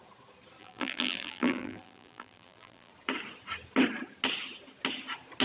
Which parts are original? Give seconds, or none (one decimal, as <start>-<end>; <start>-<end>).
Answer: 0.0-0.6; 2.9-5.4